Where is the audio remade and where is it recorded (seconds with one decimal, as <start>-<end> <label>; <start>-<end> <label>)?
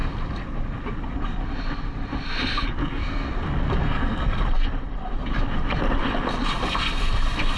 0.0-2.8 recorded; 2.8-3.3 remade; 3.3-3.8 recorded; 3.8-4.3 remade; 4.3-7.6 recorded